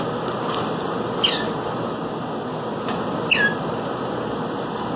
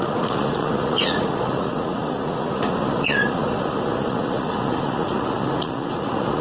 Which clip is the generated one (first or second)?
second